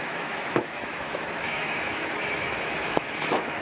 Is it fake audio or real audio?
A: fake